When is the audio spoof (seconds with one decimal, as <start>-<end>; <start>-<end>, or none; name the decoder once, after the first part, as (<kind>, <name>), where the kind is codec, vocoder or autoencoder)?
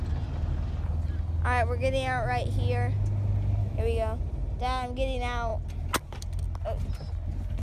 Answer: 3.6-4.2 (autoencoder, DAC-VAE)